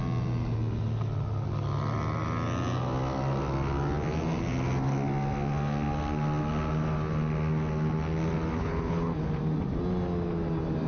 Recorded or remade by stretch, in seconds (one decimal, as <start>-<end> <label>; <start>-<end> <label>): 0.0-8.6 recorded; 8.6-9.4 remade; 9.4-10.9 recorded